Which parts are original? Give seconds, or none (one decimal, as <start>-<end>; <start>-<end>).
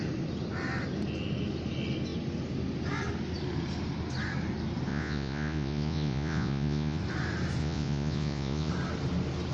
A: 0.0-4.9; 7.0-7.6; 8.7-9.5